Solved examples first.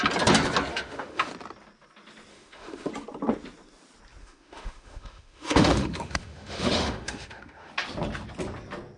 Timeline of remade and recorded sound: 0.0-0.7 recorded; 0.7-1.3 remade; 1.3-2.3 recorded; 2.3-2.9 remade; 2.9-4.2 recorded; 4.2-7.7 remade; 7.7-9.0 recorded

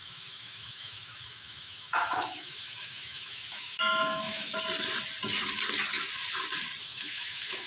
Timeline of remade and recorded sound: 0.0-4.5 remade; 4.5-6.8 recorded; 6.8-7.7 remade

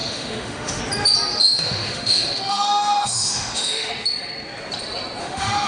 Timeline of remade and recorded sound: 0.0-0.8 remade; 0.8-1.4 recorded; 1.4-3.9 remade; 3.9-5.2 recorded; 5.2-5.7 remade

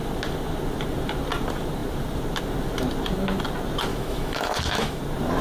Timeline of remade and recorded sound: 0.0-3.9 recorded; 3.9-5.0 remade; 5.0-5.4 recorded

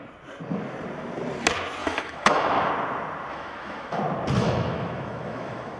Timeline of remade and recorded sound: 0.0-1.8 recorded; 1.8-2.7 remade; 2.7-3.3 recorded; 3.3-4.0 remade; 4.0-4.4 recorded; 4.4-5.8 remade

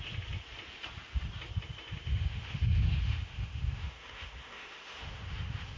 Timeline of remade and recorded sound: 0.0-2.1 recorded; 2.1-5.8 remade